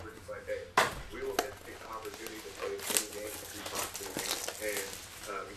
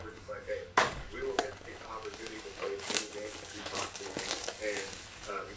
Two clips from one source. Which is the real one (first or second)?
first